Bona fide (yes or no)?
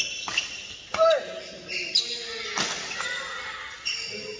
yes